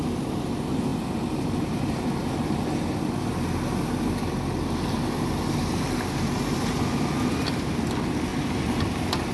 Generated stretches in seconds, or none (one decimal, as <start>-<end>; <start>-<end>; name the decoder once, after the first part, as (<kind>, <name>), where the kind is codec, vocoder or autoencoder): none